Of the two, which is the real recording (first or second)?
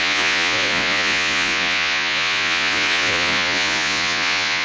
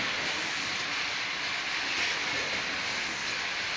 second